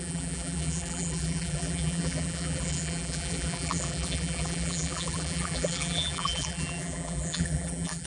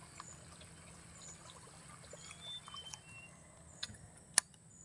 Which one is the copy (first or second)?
first